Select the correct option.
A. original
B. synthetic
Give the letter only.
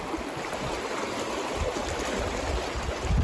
A